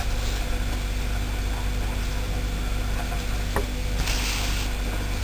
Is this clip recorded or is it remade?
recorded